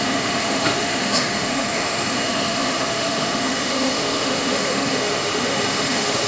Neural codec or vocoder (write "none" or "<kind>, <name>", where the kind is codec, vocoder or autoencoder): autoencoder, DAC-VAE